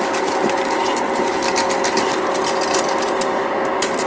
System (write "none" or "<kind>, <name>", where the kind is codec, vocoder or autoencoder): none